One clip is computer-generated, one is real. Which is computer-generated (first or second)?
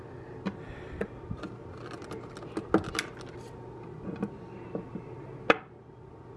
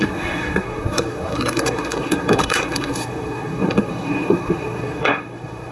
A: second